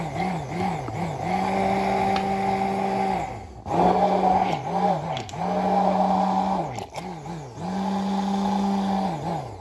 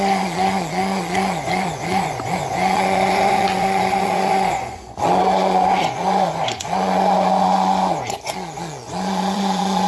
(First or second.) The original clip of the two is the first